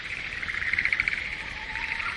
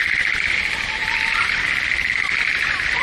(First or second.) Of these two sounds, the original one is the second